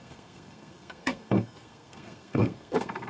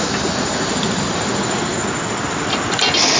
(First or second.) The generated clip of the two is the first